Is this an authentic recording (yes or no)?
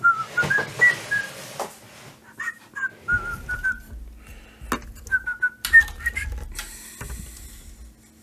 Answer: yes